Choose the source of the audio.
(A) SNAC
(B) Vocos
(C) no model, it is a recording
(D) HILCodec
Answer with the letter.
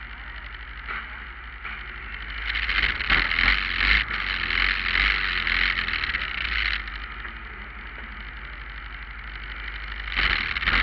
C